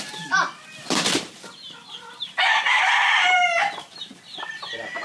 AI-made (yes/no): yes